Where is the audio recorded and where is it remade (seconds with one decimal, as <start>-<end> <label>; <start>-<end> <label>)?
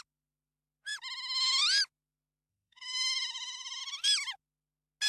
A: 0.0-2.5 recorded; 2.5-3.8 remade; 3.8-5.1 recorded